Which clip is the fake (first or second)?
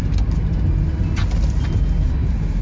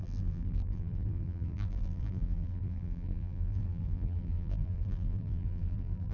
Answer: second